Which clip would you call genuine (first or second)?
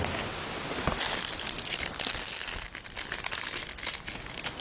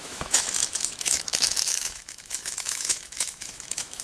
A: first